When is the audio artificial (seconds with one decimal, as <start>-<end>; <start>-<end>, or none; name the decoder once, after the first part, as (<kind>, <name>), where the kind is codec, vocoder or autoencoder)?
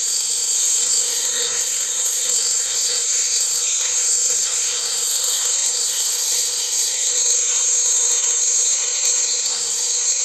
0.0-10.2 (codec, SNAC)